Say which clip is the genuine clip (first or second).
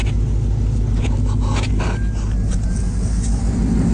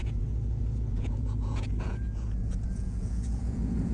first